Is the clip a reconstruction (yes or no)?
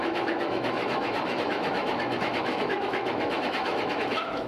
yes